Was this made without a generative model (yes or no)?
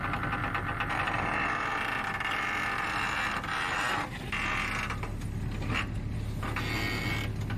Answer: yes